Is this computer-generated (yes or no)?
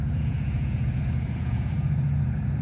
yes